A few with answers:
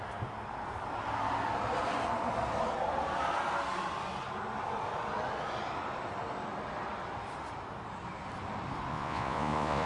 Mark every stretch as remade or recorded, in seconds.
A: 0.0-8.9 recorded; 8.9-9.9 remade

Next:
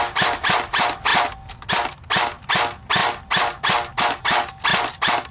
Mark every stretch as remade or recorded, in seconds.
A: 0.0-5.3 recorded

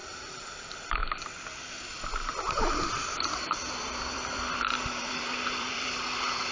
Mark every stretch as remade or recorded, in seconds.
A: 0.0-0.5 recorded; 0.5-1.0 remade; 1.0-3.4 recorded; 3.4-6.5 remade

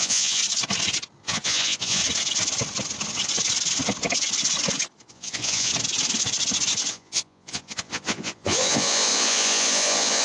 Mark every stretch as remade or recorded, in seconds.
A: 0.0-0.4 remade; 0.4-1.2 recorded; 1.2-2.0 remade; 2.0-5.1 recorded; 5.1-5.7 remade; 5.7-6.9 recorded; 6.9-10.2 remade